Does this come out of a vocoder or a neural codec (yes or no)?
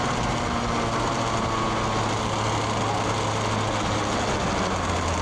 no